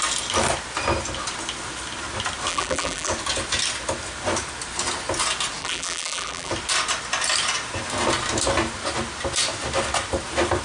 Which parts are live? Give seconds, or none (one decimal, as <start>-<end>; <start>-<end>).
0.0-2.5; 3.1-5.6; 6.5-10.6